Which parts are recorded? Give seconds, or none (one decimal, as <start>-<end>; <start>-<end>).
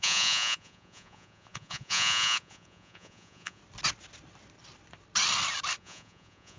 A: 3.6-5.8